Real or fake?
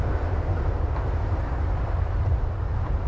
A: fake